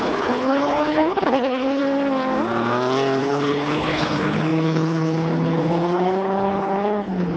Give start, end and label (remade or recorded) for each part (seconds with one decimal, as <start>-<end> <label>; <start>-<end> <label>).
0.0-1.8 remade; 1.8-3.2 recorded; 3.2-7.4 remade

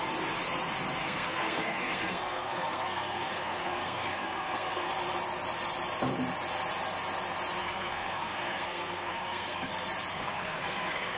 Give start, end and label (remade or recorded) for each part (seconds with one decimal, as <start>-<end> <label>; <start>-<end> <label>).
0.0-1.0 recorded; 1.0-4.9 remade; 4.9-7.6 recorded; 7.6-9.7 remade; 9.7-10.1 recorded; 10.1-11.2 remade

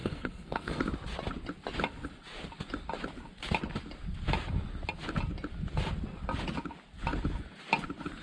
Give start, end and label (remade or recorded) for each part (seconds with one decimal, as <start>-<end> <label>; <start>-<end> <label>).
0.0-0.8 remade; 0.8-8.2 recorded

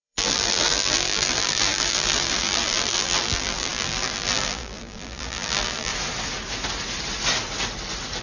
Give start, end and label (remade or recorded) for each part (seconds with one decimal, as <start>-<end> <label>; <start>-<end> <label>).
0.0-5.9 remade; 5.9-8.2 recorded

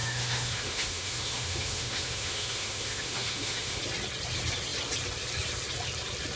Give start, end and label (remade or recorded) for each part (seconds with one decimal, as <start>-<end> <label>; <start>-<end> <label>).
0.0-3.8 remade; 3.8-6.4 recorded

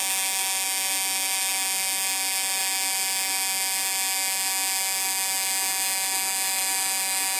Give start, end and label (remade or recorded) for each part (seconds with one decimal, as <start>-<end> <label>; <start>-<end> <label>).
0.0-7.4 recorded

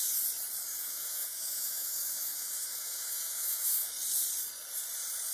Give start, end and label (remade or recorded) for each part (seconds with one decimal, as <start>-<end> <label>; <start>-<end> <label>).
0.0-0.7 recorded; 0.7-3.9 remade; 3.9-5.3 recorded

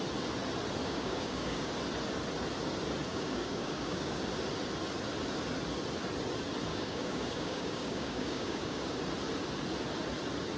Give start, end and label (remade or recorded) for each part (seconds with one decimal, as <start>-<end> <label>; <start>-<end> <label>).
0.0-0.8 recorded; 0.8-1.7 remade; 1.7-3.1 recorded; 3.1-4.2 remade; 4.2-6.7 recorded; 6.7-9.0 remade; 9.0-10.6 recorded